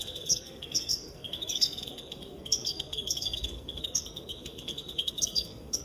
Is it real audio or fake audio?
fake